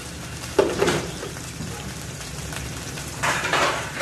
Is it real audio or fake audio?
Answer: fake